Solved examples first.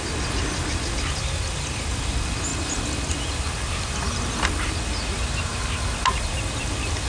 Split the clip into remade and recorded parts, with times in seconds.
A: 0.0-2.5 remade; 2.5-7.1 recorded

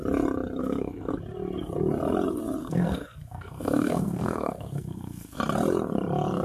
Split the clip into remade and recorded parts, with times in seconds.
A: 0.0-0.6 recorded; 0.6-1.1 remade; 1.1-2.6 recorded; 2.6-5.4 remade; 5.4-6.4 recorded

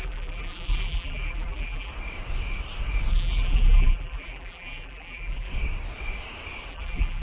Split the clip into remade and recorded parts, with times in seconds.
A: 0.0-1.9 remade; 1.9-3.1 recorded; 3.1-5.5 remade; 5.5-6.7 recorded; 6.7-7.2 remade

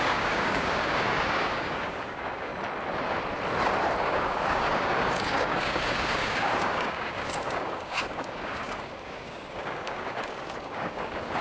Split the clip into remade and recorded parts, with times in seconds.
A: 0.0-2.5 remade; 2.5-4.0 recorded; 4.0-11.4 remade